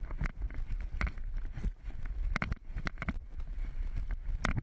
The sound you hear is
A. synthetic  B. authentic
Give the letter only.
B